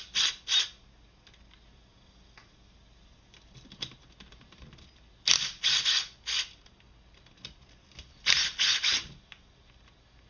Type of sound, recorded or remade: recorded